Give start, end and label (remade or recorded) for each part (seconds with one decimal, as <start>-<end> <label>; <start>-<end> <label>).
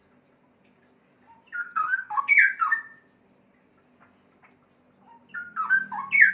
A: 0.0-1.6 recorded; 1.6-2.2 remade; 2.2-6.3 recorded